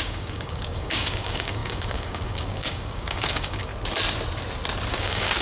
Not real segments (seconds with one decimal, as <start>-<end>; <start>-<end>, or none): 0.0-3.7; 5.0-5.4